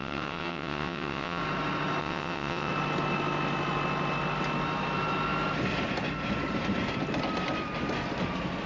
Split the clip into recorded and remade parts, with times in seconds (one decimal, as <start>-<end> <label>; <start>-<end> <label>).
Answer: 0.0-1.4 remade; 1.4-2.0 recorded; 2.0-2.7 remade; 2.7-8.7 recorded